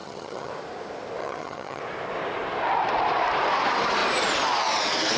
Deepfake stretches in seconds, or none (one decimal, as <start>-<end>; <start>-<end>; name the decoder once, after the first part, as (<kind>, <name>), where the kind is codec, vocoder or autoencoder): 0.0-0.5 (vocoder, HiFi-GAN); 1.2-1.8